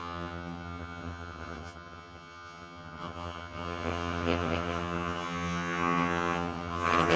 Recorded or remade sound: remade